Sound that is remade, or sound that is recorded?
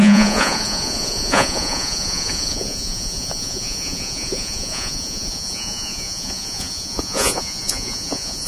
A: remade